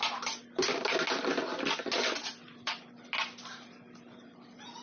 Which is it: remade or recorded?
recorded